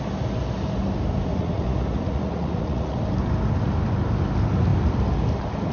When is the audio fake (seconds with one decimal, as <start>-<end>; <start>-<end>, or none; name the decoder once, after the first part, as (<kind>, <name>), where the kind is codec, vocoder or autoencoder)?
1.3-3.0 (vocoder, Vocos)